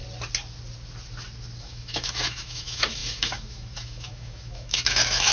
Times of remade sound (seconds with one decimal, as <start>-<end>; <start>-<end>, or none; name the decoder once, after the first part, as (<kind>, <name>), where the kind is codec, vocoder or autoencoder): 1.6-5.3 (autoencoder, DAC-VAE)